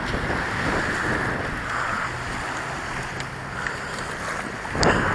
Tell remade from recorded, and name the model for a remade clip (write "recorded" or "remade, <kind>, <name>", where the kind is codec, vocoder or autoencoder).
recorded